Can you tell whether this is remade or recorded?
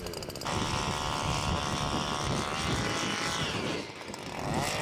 recorded